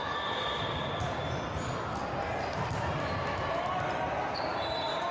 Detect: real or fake real